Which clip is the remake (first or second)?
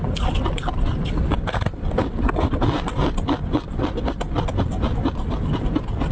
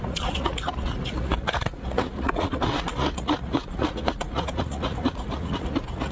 second